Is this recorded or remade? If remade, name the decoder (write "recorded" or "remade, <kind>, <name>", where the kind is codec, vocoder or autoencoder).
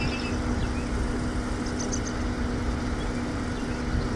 recorded